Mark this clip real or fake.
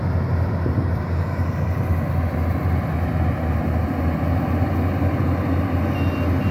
real